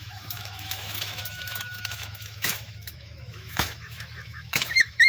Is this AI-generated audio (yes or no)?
yes